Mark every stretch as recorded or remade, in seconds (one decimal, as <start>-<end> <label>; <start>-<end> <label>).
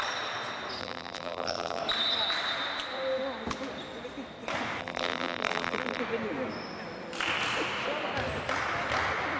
0.0-0.8 recorded; 0.8-1.8 remade; 1.8-4.8 recorded; 4.8-6.0 remade; 6.0-9.4 recorded